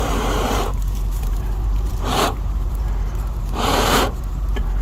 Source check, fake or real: fake